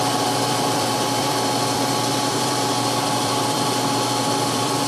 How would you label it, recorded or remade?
remade